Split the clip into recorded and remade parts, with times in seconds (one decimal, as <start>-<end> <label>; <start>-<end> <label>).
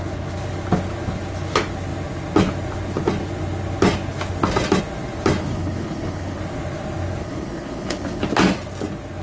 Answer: 0.0-5.4 recorded; 5.4-6.4 remade; 6.4-7.2 recorded; 7.2-8.2 remade; 8.2-9.2 recorded